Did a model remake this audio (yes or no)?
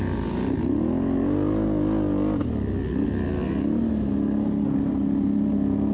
no